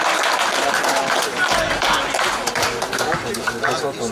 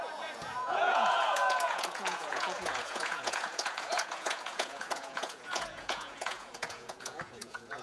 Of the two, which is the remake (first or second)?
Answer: second